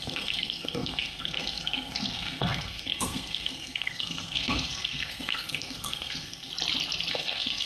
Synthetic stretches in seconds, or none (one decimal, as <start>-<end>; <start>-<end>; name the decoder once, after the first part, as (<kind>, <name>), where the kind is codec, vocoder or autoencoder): 0.0-6.5 (codec, SNAC); 7.1-7.7